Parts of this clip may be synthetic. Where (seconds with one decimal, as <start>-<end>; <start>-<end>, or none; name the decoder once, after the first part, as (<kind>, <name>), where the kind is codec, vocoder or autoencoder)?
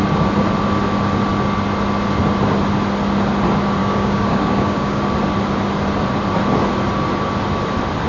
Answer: 3.8-5.0 (codec, DAC)